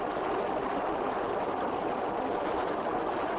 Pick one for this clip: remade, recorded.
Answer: recorded